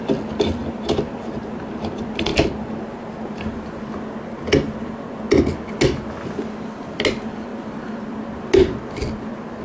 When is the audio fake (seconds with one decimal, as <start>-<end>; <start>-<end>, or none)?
none